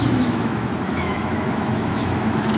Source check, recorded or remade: remade